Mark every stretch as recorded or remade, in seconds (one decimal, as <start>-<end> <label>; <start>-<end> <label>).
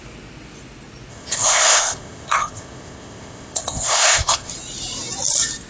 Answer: 0.0-1.1 recorded; 1.1-4.5 remade; 4.5-5.7 recorded